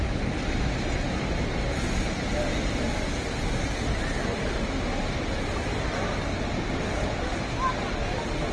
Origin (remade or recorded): recorded